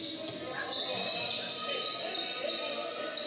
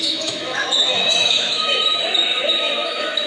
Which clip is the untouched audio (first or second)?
first